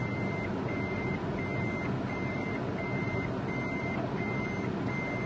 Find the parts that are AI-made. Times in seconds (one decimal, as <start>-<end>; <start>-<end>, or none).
none